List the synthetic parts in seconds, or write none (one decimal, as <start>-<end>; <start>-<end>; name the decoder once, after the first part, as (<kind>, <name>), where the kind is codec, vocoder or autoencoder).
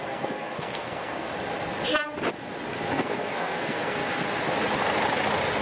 0.0-1.3 (codec, SNAC); 2.9-4.0